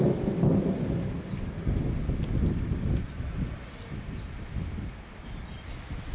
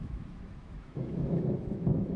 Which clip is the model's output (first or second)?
second